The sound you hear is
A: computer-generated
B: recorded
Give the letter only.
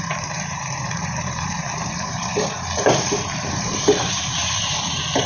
A